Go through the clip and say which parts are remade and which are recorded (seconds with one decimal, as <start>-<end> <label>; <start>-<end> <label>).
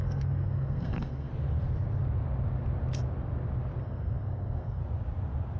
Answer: 0.0-1.3 remade; 1.3-3.8 recorded; 3.8-4.8 remade; 4.8-5.6 recorded